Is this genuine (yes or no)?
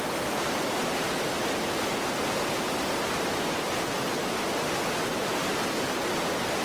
yes